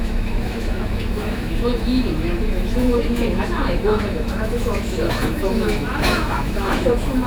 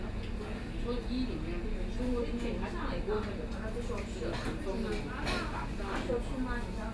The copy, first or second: first